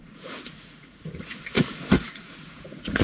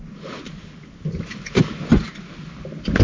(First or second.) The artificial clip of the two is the first